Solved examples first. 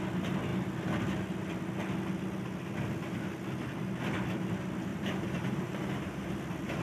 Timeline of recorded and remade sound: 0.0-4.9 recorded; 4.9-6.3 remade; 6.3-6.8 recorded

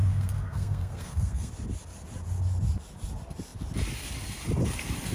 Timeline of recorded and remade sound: 0.0-1.5 remade; 1.5-5.1 recorded

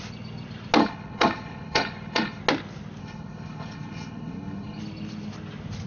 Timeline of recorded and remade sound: 0.0-0.8 recorded; 0.8-2.4 remade; 2.4-3.0 recorded; 3.0-4.8 remade; 4.8-5.9 recorded

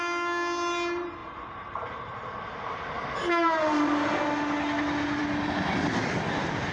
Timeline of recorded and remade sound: 0.0-1.2 recorded; 1.2-4.2 remade; 4.2-6.7 recorded

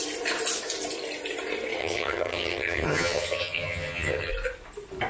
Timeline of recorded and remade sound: 0.0-1.8 recorded; 1.8-4.3 remade; 4.3-5.1 recorded

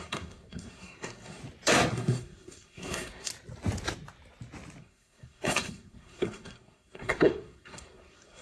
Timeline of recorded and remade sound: 0.0-1.4 remade; 1.4-1.9 recorded; 1.9-3.3 remade; 3.3-4.8 recorded; 4.8-8.4 remade

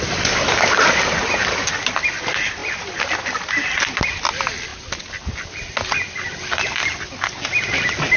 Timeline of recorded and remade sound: 0.0-8.2 recorded